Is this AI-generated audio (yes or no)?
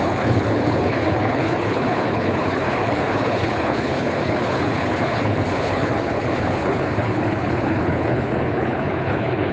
yes